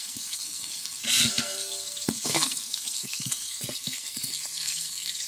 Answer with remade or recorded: remade